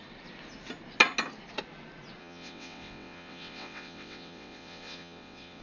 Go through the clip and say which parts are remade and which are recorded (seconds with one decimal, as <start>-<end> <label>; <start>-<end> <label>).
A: 0.0-2.2 recorded; 2.2-5.6 remade

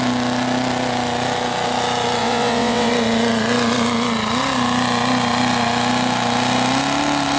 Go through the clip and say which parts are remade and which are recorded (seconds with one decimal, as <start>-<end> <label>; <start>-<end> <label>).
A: 0.0-2.2 recorded; 2.2-2.9 remade; 2.9-7.4 recorded